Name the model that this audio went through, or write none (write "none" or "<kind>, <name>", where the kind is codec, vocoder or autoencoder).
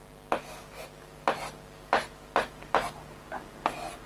none